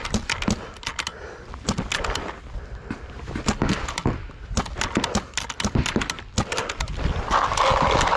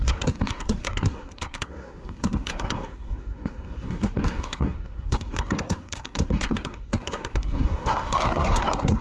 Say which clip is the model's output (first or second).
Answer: second